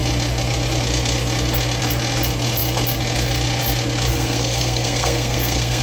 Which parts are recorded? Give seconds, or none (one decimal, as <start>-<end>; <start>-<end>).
0.0-4.1